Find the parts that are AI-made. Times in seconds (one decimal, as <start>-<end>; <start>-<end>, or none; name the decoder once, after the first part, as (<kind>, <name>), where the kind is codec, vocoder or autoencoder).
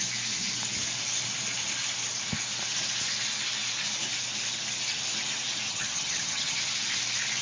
5.7-6.6 (vocoder, HiFi-GAN)